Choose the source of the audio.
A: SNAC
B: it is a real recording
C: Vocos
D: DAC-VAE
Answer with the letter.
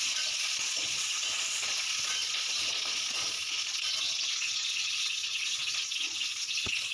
C